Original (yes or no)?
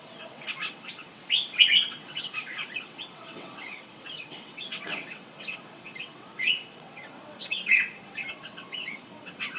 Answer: no